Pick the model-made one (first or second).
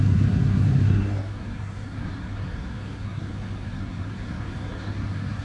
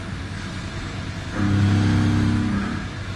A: first